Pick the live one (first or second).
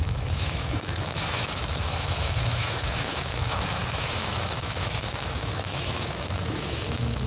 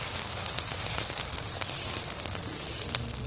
second